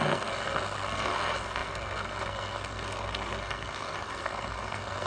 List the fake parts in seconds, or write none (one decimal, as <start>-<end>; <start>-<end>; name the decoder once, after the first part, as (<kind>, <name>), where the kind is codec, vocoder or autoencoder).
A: 0.0-5.1 (codec, SNAC)